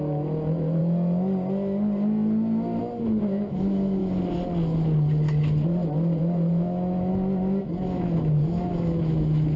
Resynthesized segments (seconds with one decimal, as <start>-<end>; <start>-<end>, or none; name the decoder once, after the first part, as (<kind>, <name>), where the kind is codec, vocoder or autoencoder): 0.0-0.8 (autoencoder, DAC-VAE); 2.8-4.0; 6.2-7.1; 7.6-9.6